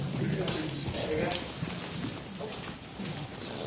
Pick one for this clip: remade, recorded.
recorded